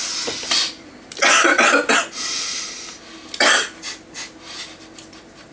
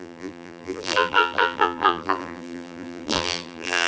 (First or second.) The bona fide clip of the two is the first